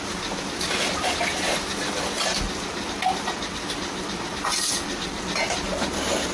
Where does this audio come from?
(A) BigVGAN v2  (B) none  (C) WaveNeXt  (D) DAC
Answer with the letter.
B